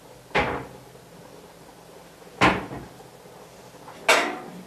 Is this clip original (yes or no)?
yes